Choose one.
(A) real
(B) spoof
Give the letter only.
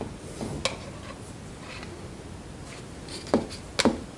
A